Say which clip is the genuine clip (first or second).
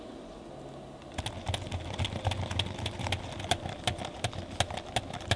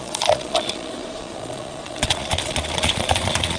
first